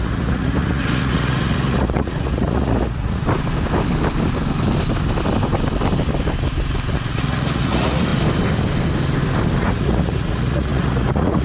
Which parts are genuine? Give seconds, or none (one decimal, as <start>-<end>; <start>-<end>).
3.2-6.9; 8.1-9.6